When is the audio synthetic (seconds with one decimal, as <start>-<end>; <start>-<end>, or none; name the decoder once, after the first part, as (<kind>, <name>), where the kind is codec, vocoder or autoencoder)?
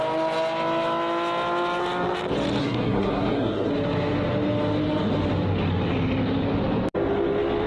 2.6-3.7 (codec, SNAC)